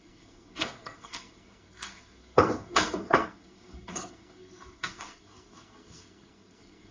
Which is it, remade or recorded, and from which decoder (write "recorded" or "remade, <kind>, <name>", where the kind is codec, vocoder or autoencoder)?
remade, codec, SNAC